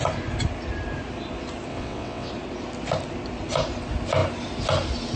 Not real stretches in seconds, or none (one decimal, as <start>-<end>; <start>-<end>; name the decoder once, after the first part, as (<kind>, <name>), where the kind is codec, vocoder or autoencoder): 1.7-2.3 (vocoder, WaveNeXt)